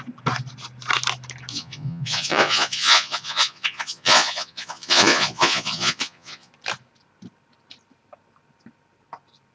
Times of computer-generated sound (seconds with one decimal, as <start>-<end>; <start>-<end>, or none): 1.5-6.5